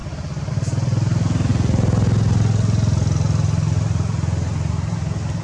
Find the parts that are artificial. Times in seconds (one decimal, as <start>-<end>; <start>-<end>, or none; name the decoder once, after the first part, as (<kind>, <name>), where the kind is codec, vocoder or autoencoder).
0.0-0.5 (vocoder, BigVGAN v2)